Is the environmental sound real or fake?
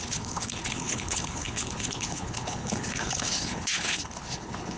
fake